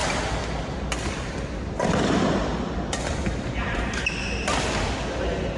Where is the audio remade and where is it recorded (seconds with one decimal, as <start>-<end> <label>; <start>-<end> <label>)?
0.0-5.6 recorded